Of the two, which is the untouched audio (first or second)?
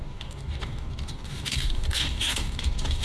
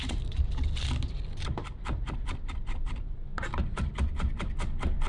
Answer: second